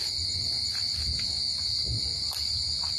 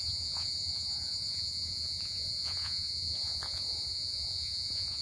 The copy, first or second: second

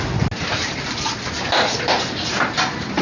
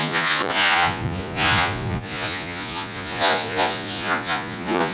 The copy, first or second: second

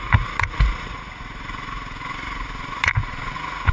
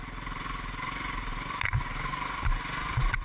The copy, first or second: first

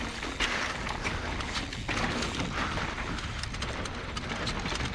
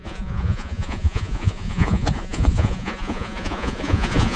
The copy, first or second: second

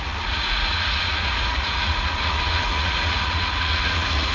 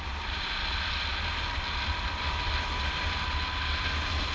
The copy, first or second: first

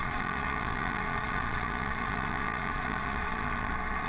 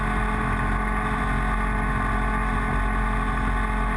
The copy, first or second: first